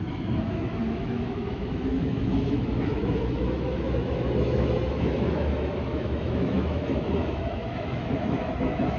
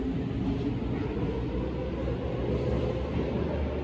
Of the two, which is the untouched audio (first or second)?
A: second